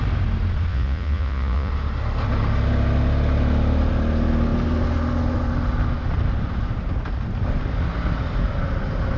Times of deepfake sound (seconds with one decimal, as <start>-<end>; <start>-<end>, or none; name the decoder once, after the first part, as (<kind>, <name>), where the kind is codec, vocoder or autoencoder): 0.7-1.7 (vocoder, Vocos)